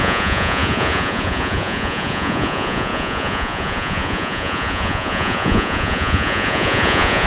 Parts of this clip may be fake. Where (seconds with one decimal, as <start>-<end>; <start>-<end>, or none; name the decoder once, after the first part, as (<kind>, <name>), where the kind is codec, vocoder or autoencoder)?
0.0-7.3 (vocoder, Vocos)